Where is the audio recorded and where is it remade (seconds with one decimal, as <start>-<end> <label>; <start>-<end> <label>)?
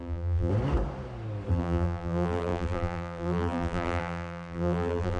0.0-0.5 remade; 0.5-1.5 recorded; 1.5-5.2 remade